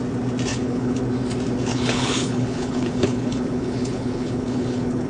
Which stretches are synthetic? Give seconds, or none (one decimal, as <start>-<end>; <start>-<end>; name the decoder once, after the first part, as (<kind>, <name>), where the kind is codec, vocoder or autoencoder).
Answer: 0.5-1.0 (codec, HILCodec); 1.7-5.1